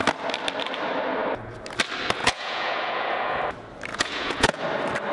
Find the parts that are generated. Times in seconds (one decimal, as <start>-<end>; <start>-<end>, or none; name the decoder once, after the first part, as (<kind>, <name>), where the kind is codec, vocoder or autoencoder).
2.2-3.4 (vocoder, Vocos); 3.9-4.6